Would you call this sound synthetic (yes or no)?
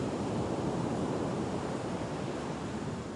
yes